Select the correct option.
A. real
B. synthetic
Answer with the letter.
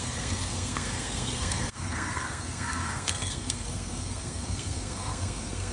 B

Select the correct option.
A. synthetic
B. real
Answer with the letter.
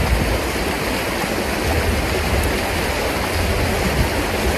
B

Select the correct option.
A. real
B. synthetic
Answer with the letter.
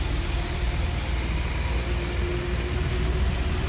A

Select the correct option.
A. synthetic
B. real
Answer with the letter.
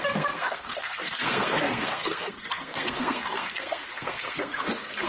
A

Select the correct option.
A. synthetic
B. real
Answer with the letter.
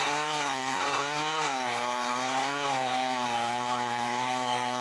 A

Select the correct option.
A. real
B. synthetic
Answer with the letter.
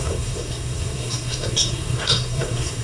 B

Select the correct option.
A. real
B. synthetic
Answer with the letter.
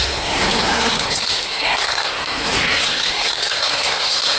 B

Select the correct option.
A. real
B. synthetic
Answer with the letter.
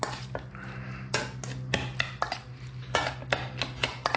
A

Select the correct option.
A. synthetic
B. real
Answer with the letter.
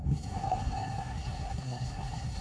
A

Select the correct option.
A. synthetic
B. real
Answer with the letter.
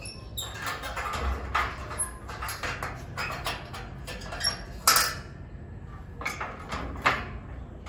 B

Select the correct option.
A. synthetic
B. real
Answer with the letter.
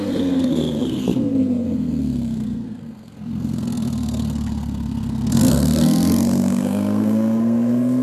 A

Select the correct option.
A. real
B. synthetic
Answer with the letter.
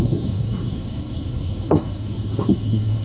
B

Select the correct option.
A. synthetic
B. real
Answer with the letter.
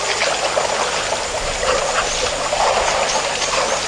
B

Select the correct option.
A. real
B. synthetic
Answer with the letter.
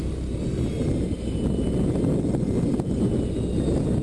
A